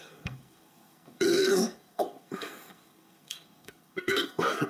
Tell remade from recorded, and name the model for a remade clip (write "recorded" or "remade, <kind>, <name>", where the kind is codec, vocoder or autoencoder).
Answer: remade, codec, SNAC